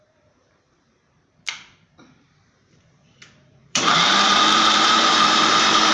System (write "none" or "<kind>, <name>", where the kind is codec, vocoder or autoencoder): vocoder, BigVGAN v2